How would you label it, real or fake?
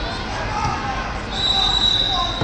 real